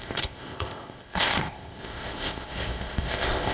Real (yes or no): no